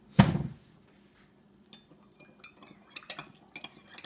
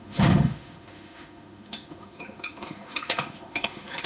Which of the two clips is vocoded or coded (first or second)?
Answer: second